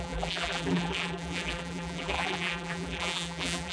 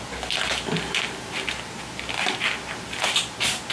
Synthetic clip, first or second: first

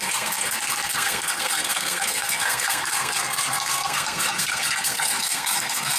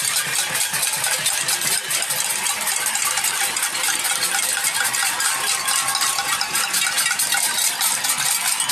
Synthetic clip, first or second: first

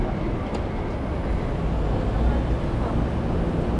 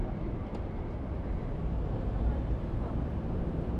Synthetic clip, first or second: second